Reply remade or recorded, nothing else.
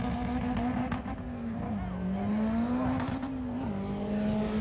recorded